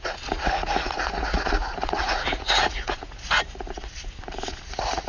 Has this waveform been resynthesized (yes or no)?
yes